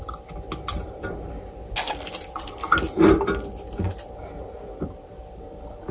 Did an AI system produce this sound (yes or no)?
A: no